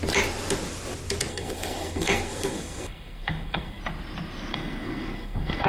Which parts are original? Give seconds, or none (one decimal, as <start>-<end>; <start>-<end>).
0.0-1.3; 3.8-4.5